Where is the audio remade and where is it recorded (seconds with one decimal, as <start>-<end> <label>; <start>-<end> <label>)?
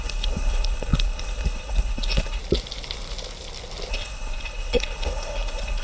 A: 0.0-2.4 remade; 2.4-3.9 recorded; 3.9-5.8 remade